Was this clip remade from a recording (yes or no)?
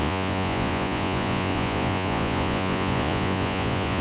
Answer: yes